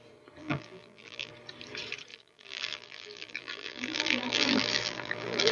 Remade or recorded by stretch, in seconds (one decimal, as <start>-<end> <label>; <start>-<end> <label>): 0.0-0.4 recorded; 0.4-1.3 remade; 1.3-2.1 recorded; 2.1-5.5 remade

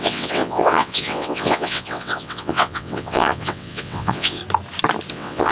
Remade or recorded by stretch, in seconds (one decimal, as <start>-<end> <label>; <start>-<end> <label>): 0.0-4.4 remade; 4.4-5.1 recorded; 5.1-5.5 remade

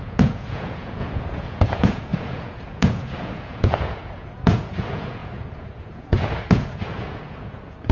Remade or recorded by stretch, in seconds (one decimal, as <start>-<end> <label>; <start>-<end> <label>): 0.0-7.9 remade

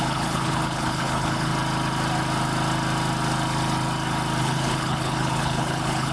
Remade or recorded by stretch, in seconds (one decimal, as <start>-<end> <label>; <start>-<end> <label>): 0.0-1.5 remade; 1.5-4.4 recorded; 4.4-6.1 remade